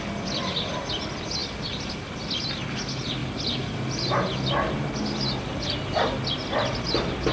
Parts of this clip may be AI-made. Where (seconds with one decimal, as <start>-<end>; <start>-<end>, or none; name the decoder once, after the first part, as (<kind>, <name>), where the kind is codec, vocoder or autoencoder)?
none